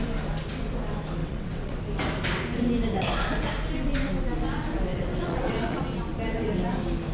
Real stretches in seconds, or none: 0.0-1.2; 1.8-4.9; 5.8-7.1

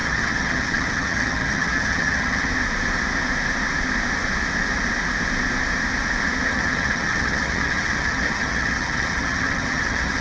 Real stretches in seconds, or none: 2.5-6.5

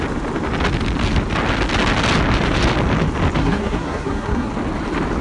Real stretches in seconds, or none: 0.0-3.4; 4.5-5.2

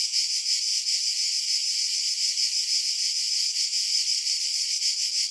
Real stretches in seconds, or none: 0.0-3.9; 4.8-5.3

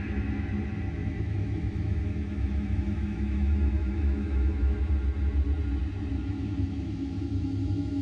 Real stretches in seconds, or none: 0.0-1.0; 4.9-6.2

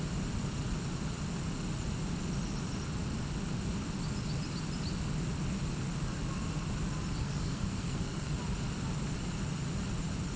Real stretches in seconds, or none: 0.0-7.2; 8.3-10.4

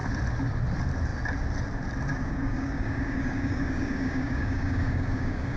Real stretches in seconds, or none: 0.0-2.1

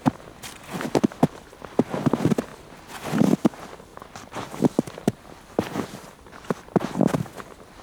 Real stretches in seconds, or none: 0.0-3.9; 5.0-7.8